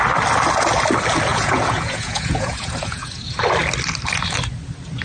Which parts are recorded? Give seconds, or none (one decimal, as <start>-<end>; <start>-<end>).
0.0-1.3; 3.4-5.0

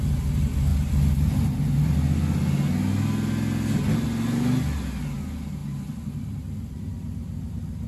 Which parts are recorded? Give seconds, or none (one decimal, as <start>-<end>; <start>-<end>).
0.0-7.9

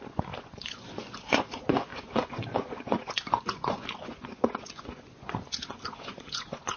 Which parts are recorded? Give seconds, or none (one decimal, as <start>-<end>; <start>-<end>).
none

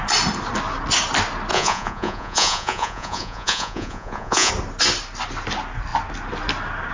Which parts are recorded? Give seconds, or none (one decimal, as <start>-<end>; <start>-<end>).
0.0-1.5; 4.5-6.9

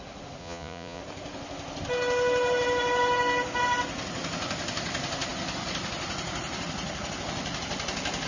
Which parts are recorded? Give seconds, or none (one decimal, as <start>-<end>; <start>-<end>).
0.0-0.4; 1.0-8.3

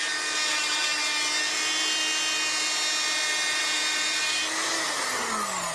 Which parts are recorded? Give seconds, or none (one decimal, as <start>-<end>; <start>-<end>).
0.0-3.6; 4.2-5.7

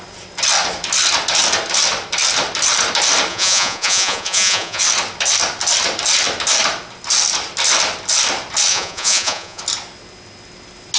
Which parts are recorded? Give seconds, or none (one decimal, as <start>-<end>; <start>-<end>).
0.0-3.3; 4.8-8.7; 9.6-11.0